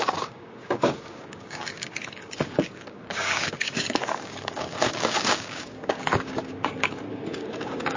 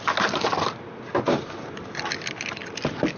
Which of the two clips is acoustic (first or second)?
second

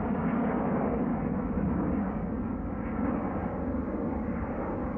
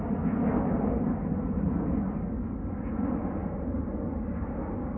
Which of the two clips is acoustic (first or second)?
second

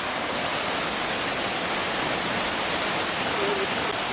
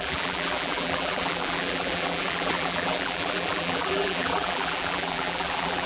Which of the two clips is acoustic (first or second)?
first